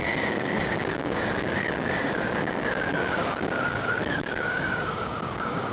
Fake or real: fake